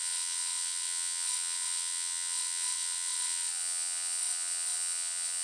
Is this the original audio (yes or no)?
no